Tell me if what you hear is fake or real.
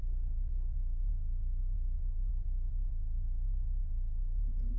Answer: fake